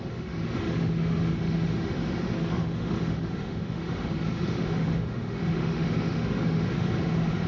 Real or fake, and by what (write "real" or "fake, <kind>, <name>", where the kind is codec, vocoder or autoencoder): fake, autoencoder, DAC-VAE